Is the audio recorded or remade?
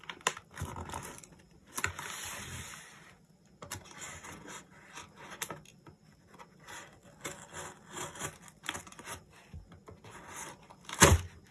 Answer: recorded